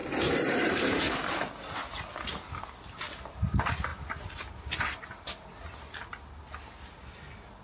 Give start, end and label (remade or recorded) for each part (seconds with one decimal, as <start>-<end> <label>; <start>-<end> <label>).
0.0-1.0 remade; 1.0-7.6 recorded